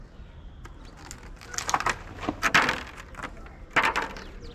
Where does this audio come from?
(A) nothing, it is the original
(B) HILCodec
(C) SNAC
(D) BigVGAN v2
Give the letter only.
A